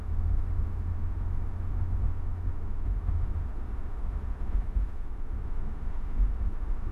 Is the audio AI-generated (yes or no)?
yes